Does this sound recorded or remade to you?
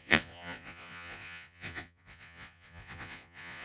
remade